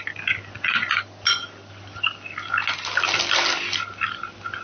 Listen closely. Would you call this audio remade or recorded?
recorded